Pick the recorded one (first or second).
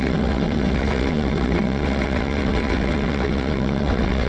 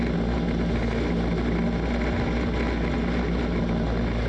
second